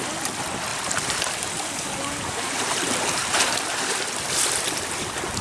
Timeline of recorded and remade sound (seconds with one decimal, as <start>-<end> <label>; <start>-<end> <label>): 0.0-0.7 recorded; 0.7-3.9 remade; 3.9-5.4 recorded